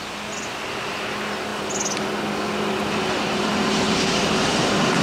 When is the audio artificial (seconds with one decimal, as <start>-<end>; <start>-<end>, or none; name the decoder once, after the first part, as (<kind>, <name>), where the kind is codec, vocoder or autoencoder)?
none